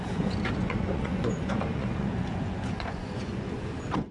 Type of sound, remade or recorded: remade